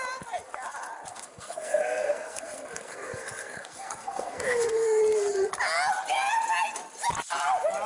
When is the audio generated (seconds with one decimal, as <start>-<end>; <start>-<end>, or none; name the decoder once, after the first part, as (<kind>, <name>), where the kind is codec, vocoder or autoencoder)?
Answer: 1.1-5.0 (codec, SNAC)